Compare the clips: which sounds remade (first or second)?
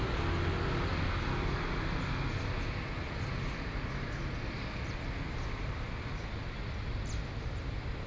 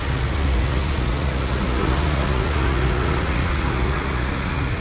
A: second